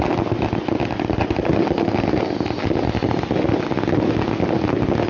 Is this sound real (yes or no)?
yes